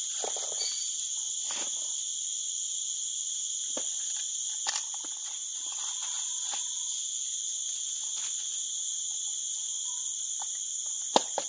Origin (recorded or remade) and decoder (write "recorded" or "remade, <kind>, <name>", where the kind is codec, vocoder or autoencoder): recorded